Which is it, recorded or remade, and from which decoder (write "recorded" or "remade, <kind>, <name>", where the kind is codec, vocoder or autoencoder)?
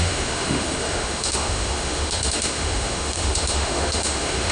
remade, autoencoder, DAC-VAE